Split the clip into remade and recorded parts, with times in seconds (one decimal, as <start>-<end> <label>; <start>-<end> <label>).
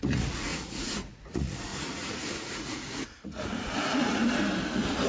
0.0-4.2 remade; 4.2-5.1 recorded